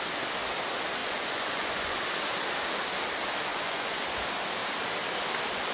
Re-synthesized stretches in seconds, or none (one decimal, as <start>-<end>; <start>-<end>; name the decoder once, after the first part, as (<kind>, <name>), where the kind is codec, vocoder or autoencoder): 1.0-2.0 (vocoder, Vocos); 3.5-4.0